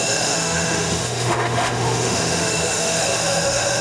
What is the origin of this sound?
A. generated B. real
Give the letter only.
A